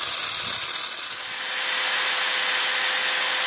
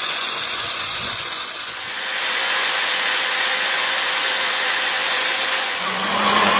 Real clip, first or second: first